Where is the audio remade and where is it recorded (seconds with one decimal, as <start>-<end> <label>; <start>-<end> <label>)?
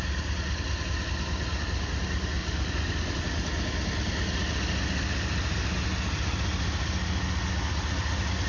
0.0-2.4 recorded; 2.4-3.2 remade; 3.2-8.5 recorded